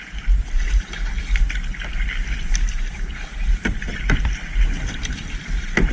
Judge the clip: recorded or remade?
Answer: recorded